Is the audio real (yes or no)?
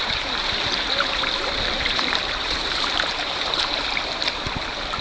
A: no